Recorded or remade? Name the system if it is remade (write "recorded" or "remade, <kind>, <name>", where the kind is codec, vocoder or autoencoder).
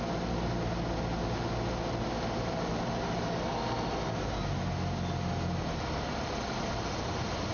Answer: recorded